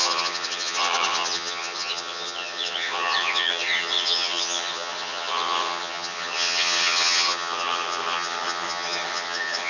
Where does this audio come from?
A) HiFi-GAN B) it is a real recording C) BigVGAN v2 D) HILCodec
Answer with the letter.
A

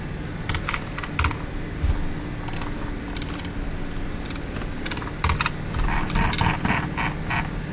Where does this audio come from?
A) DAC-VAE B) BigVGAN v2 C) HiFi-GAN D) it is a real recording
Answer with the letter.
D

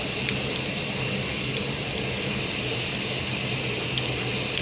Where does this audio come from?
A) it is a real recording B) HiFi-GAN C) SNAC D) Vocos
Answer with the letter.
A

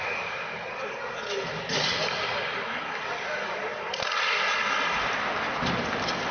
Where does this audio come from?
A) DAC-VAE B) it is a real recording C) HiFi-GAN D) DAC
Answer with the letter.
B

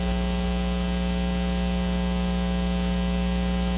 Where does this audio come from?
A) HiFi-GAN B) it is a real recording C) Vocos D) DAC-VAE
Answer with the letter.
B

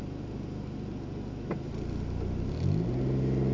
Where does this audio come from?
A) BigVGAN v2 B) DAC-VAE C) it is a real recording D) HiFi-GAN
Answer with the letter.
C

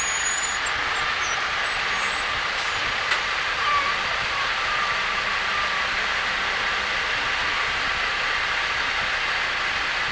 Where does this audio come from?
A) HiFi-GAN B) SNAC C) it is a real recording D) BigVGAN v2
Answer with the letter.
C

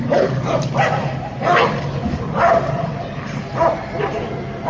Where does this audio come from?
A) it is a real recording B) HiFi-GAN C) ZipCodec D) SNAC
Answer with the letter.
A